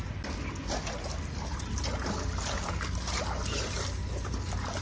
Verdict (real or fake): real